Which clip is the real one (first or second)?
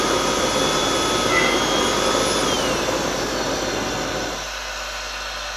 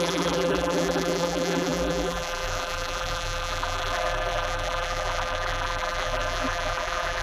first